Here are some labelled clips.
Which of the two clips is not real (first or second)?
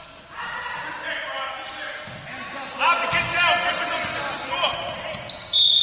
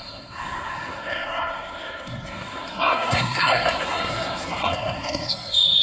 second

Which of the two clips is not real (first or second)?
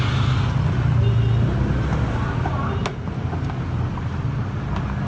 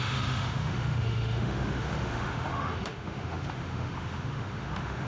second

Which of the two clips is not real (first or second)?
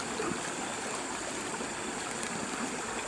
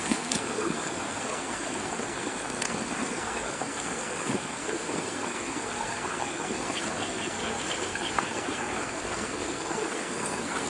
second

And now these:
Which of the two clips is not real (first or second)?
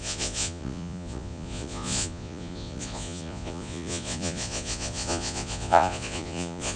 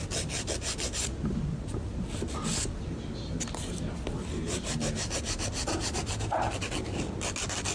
first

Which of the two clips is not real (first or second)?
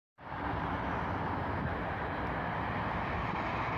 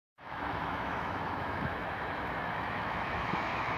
second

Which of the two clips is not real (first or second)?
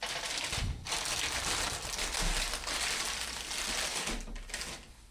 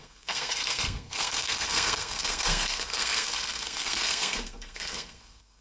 second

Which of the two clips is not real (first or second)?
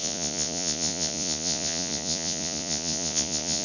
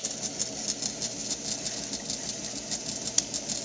first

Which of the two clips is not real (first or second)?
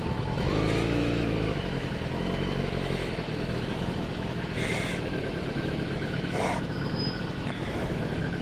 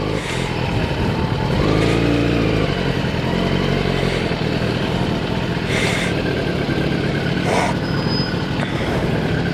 first